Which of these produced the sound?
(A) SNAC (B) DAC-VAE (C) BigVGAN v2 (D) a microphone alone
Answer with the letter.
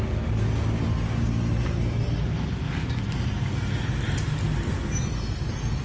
D